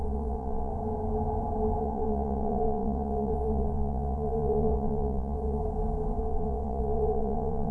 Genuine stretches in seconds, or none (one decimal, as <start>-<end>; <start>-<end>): 0.7-1.8; 5.6-6.2